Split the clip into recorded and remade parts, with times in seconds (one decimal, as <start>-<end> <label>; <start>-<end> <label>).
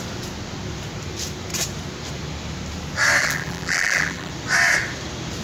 0.0-3.2 recorded; 3.2-4.3 remade; 4.3-5.4 recorded